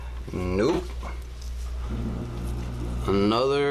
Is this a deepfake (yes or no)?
no